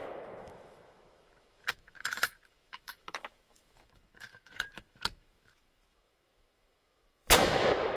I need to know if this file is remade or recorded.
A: remade